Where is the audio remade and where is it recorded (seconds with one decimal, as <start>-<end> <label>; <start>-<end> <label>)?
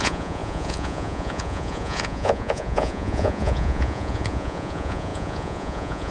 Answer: 0.0-6.1 remade